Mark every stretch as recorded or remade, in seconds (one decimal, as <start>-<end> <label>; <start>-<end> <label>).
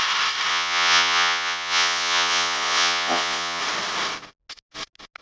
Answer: 0.0-0.5 recorded; 0.5-3.6 remade; 3.6-5.2 recorded